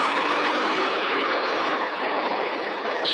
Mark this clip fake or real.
fake